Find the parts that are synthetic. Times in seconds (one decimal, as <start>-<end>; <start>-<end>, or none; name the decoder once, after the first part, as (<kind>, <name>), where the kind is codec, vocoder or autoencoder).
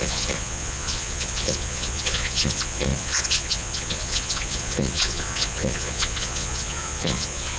0.0-7.6 (vocoder, Vocos)